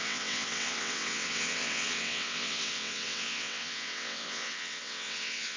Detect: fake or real fake